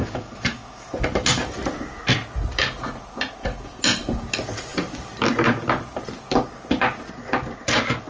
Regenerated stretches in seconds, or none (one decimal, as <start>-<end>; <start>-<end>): 0.0-0.9